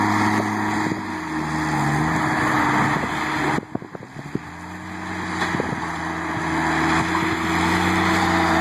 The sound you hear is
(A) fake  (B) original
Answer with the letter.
B